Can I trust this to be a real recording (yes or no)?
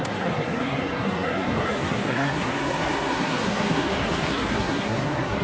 no